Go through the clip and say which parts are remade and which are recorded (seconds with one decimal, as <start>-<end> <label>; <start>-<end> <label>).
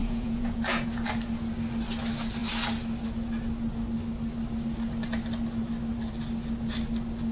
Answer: 0.0-1.1 remade; 1.1-7.3 recorded